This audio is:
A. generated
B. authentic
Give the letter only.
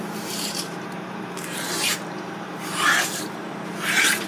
A